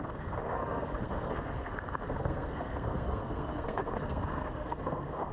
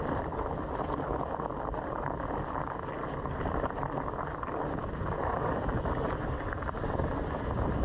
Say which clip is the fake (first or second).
first